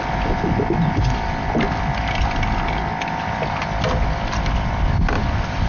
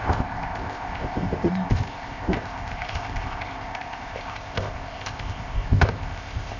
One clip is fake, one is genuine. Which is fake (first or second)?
second